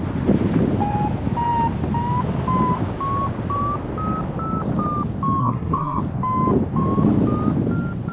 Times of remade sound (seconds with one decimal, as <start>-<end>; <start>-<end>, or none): 5.4-6.0